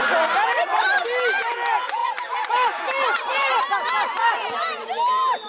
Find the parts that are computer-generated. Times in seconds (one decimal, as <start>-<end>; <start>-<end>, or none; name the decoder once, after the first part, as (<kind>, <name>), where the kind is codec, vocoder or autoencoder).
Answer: 2.0-3.6 (vocoder, BigVGAN v2)